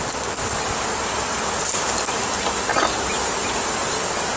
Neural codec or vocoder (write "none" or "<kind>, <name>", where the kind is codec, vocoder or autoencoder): none